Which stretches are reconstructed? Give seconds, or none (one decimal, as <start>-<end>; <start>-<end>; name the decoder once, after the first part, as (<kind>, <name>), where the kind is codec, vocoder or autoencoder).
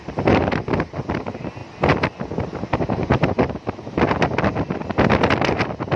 none